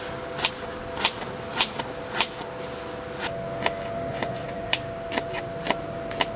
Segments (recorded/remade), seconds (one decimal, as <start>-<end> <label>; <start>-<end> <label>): 0.0-4.1 recorded; 4.1-4.8 remade; 4.8-6.4 recorded